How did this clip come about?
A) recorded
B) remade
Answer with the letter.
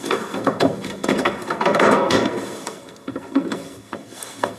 B